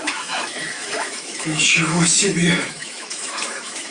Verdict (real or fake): fake